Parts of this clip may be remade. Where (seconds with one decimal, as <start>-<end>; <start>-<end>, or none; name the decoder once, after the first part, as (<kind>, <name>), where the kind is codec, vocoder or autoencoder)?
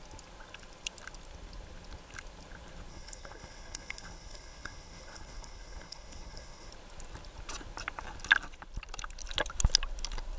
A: 2.9-6.7 (codec, HILCodec)